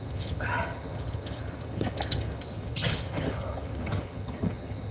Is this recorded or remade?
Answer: remade